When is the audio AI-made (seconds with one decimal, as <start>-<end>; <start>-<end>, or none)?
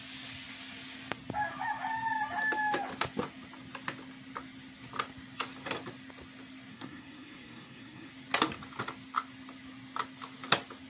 6.7-8.1